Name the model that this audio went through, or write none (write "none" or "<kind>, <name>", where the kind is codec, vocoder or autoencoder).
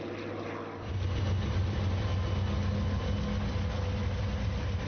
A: none